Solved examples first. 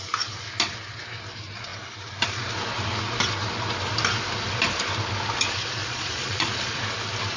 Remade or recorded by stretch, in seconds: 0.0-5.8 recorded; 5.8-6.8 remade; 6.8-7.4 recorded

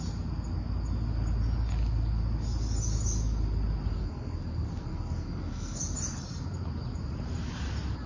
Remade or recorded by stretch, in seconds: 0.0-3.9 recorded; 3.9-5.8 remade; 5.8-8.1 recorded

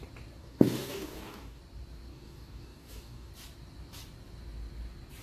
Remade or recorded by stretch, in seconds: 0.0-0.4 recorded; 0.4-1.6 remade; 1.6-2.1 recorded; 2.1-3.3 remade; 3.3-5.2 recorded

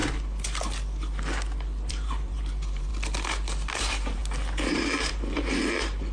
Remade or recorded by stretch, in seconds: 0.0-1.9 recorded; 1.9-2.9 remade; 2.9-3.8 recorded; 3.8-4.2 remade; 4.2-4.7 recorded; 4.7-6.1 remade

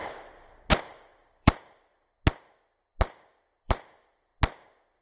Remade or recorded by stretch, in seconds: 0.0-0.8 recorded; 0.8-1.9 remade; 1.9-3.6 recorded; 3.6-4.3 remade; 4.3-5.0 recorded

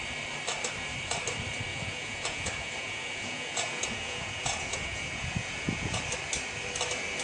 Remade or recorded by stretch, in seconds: 0.0-1.7 recorded; 1.7-6.0 remade; 6.0-7.2 recorded